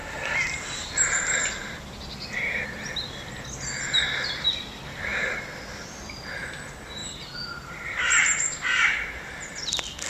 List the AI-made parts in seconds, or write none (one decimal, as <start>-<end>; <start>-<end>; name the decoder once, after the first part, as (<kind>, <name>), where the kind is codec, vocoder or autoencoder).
0.0-1.4 (vocoder, BigVGAN v2); 5.1-5.6; 7.0-9.3